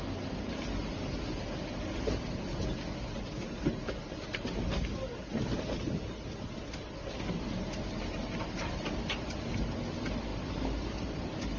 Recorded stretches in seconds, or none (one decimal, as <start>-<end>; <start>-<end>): 0.0-4.0; 7.8-11.6